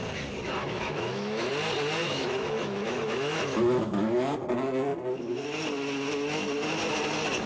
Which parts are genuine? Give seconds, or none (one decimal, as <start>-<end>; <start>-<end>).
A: 0.0-0.6; 1.5-2.0; 4.3-7.5